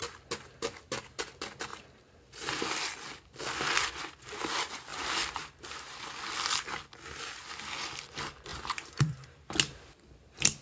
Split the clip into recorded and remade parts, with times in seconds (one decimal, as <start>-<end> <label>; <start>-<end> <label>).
0.0-4.9 recorded; 4.9-6.0 remade; 6.0-8.5 recorded; 8.5-9.5 remade; 9.5-10.6 recorded